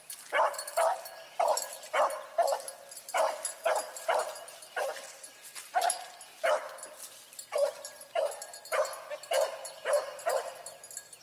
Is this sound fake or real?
real